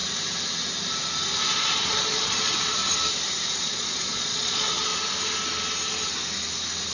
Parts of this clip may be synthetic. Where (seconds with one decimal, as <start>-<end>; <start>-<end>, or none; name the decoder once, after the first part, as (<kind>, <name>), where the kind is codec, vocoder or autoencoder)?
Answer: 1.5-2.8 (vocoder, Vocos); 3.6-4.9